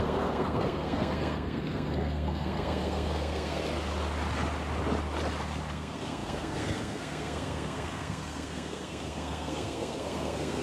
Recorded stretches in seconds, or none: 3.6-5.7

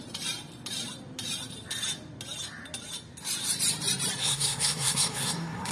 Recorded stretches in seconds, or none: 0.0-4.2

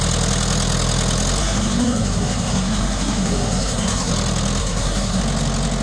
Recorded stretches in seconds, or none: 0.0-1.4; 4.1-4.6; 5.2-5.8

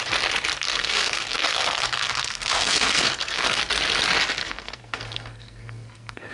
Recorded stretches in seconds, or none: 0.0-0.7; 3.6-4.4

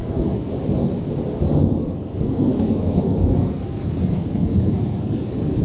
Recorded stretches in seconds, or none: 0.5-1.8

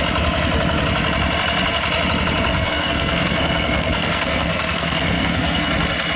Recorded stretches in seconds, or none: 0.0-2.5; 5.7-6.2

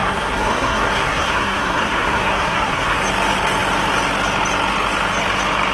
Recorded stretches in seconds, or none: 3.0-5.7